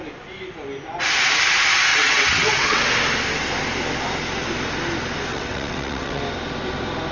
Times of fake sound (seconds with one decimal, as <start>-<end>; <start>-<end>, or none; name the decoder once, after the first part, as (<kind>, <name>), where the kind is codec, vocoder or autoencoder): 1.9-2.8 (vocoder, WaveNeXt); 5.3-6.2